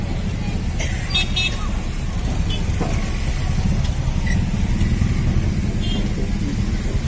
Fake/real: real